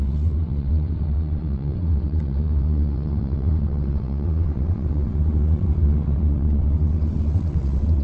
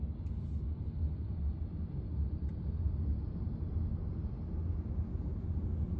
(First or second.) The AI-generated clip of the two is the first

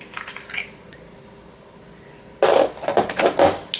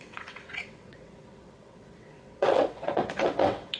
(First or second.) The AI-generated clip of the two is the second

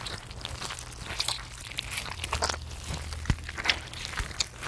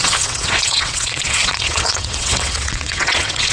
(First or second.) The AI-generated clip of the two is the second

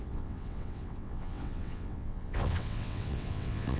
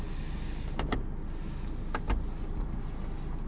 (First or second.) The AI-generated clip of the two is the first